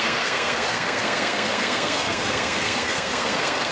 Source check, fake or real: fake